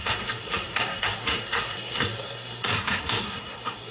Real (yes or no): no